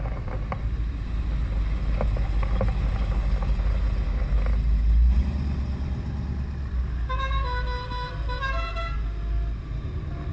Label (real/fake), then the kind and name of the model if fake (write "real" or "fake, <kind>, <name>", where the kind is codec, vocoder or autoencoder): real